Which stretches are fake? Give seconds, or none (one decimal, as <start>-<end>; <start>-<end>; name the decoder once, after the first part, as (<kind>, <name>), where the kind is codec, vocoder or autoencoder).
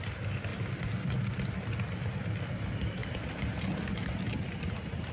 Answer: none